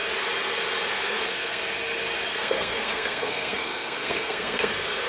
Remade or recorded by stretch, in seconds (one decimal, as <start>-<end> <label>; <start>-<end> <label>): 0.0-0.9 recorded; 0.9-1.6 remade; 1.6-2.3 recorded; 2.3-5.1 remade